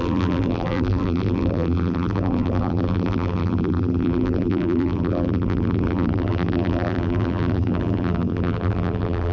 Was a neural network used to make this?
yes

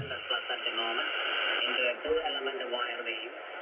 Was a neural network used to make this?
no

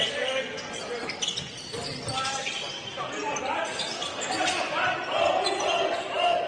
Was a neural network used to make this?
no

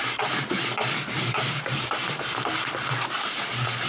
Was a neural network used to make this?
yes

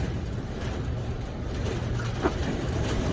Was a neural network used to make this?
yes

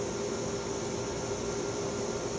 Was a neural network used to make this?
no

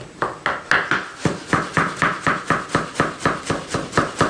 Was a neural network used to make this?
no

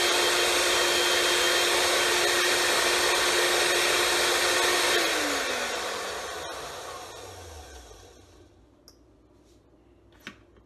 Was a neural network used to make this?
no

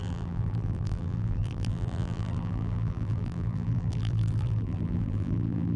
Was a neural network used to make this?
yes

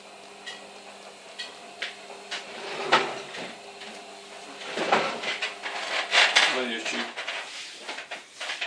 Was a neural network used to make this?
no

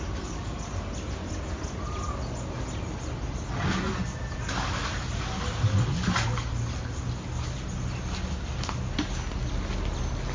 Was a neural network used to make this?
no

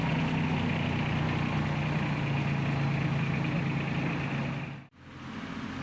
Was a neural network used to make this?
no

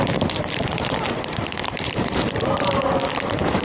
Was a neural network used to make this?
yes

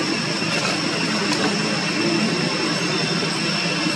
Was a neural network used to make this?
no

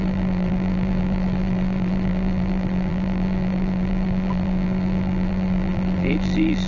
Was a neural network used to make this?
yes